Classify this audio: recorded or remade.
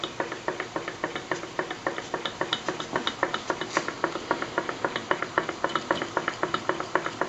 recorded